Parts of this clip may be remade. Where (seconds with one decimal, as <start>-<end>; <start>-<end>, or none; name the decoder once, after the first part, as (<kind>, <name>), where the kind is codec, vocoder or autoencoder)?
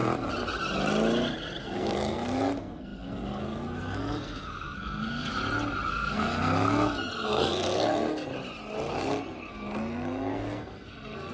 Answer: 1.6-5.3 (codec, SNAC); 5.9-8.3; 8.9-11.3